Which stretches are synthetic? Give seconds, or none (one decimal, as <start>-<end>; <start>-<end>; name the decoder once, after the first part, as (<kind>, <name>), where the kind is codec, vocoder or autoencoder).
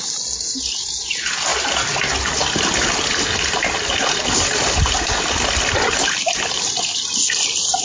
none